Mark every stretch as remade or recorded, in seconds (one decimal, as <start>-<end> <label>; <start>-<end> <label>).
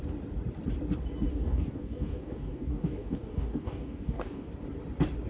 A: 0.0-1.3 recorded; 1.3-4.5 remade; 4.5-5.3 recorded